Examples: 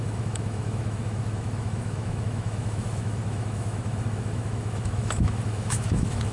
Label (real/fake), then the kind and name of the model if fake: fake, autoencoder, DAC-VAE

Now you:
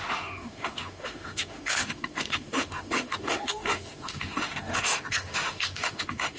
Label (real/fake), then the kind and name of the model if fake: fake, autoencoder, DAC-VAE